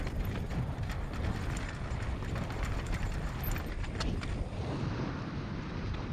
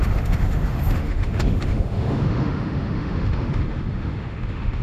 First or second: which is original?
first